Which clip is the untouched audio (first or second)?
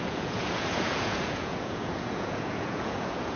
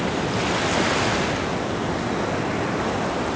second